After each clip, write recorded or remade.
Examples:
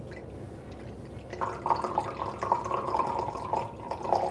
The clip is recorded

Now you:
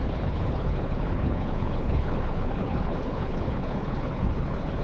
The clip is remade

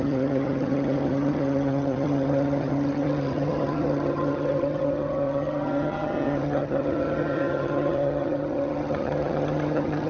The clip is remade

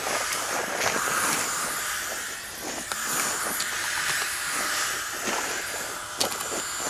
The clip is recorded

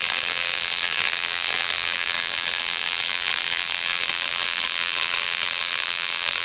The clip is remade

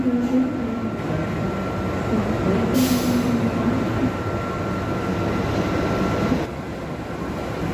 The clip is recorded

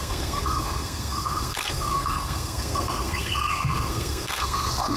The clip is remade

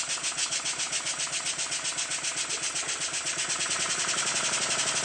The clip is recorded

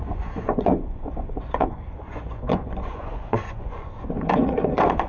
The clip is remade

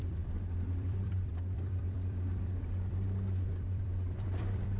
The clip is remade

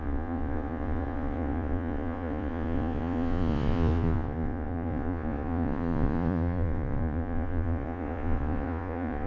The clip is remade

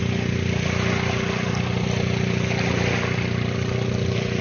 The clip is recorded